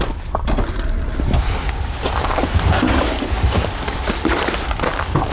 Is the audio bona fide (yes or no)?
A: yes